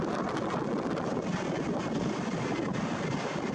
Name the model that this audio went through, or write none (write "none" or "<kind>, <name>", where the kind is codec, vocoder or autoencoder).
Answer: none